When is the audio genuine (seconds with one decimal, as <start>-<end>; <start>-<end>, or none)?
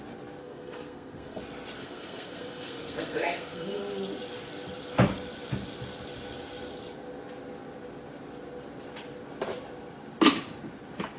0.0-0.4; 1.4-1.8; 3.8-11.2